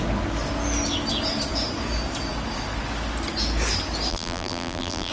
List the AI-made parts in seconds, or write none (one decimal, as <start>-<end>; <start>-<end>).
4.1-5.1

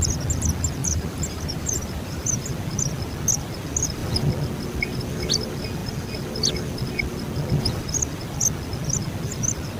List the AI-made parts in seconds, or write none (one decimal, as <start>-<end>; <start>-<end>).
0.8-2.5

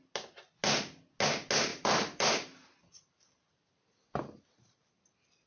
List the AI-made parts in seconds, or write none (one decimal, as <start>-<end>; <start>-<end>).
1.7-5.0

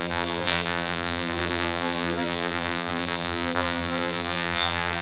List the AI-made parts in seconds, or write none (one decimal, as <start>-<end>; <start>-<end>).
0.0-5.0